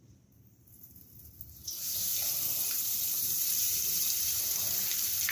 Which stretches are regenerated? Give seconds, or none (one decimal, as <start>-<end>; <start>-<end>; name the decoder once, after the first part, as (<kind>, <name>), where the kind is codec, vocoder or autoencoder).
0.0-5.3 (vocoder, BigVGAN v2)